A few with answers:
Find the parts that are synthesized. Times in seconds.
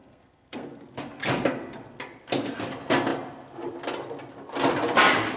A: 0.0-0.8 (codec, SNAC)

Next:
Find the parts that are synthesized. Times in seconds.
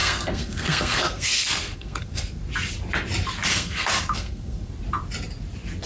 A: 0.0-2.4 (codec, SNAC); 3.5-4.7